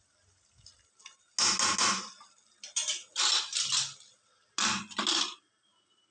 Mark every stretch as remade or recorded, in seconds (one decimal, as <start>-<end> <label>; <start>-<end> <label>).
0.0-6.1 recorded